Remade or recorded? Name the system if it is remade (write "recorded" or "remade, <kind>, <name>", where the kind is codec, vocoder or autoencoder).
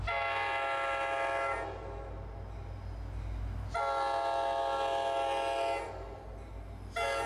recorded